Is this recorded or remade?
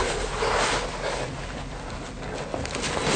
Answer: recorded